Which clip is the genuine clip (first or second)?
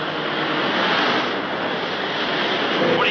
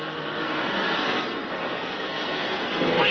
first